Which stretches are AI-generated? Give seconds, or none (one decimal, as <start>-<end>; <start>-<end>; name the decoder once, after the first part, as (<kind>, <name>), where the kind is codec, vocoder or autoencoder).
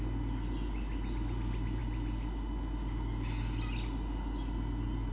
none